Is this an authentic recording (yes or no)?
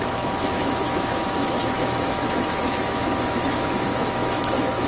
no